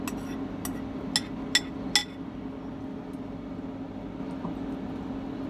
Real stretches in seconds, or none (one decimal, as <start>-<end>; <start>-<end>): 0.0-5.5